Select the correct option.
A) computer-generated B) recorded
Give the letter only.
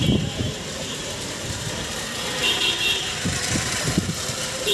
A